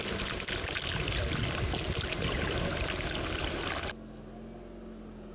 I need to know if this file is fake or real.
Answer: real